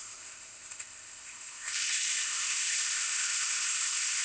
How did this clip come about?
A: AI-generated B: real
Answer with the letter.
A